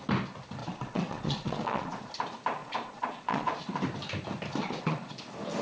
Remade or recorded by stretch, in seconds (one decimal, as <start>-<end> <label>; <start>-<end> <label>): 0.0-0.6 recorded; 0.6-2.1 remade; 2.1-2.6 recorded; 2.6-3.6 remade; 3.6-4.6 recorded; 4.6-5.1 remade; 5.1-5.6 recorded